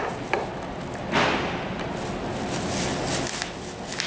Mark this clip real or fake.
real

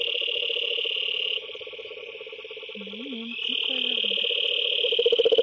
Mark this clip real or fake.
real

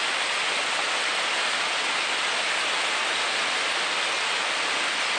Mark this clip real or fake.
real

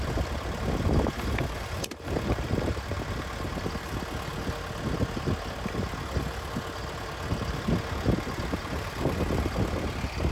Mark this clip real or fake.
real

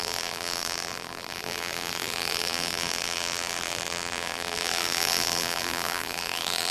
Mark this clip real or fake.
fake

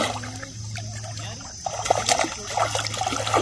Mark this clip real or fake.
real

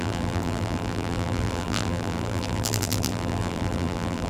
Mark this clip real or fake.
fake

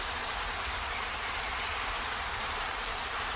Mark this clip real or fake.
fake